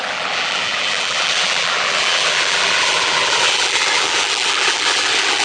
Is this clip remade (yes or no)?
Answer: yes